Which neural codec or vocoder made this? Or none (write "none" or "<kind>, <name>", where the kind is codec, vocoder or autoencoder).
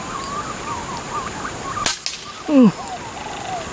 none